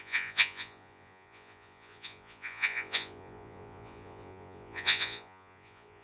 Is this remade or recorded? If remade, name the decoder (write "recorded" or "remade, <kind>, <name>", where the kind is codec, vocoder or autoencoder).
remade, vocoder, Vocos